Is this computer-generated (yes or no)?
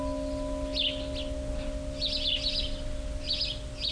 no